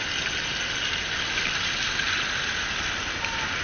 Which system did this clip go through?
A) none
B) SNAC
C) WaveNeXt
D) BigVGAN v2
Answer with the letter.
A